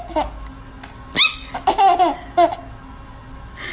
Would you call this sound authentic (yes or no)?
yes